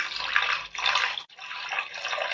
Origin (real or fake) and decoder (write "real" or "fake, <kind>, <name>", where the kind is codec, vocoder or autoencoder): real